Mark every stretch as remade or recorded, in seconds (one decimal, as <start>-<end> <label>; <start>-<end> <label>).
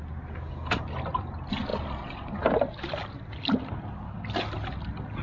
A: 0.0-5.2 recorded